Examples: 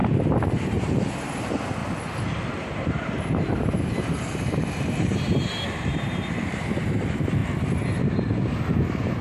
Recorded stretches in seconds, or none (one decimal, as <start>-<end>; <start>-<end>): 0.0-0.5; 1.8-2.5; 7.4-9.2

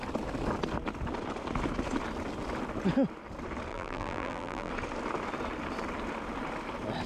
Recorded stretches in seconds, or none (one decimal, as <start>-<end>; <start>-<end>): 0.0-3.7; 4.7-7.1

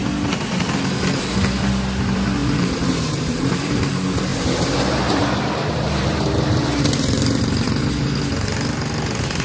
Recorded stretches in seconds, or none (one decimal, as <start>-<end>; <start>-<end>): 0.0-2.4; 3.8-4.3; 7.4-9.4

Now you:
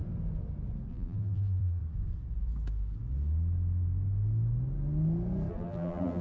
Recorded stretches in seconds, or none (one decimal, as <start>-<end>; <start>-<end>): 0.0-0.9; 1.8-5.5